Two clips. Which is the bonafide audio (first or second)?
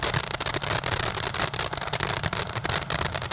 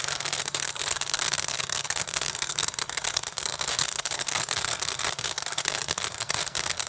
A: first